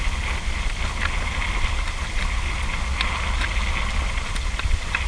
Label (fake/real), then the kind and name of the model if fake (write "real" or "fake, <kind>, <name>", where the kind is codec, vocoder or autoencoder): real